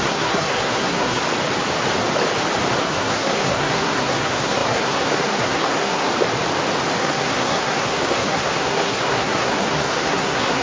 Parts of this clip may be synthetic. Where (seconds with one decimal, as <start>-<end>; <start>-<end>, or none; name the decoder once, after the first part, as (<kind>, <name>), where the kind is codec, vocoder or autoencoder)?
0.0-1.2 (codec, SNAC); 2.8-6.1; 7.0-10.6